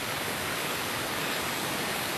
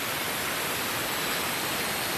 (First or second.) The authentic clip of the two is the second